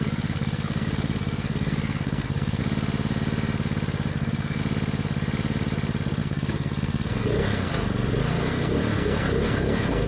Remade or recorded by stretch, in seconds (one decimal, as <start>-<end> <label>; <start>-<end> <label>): 0.0-2.6 remade; 2.6-4.1 recorded; 4.1-4.6 remade; 4.6-6.2 recorded; 6.2-7.7 remade; 7.7-8.3 recorded; 8.3-10.1 remade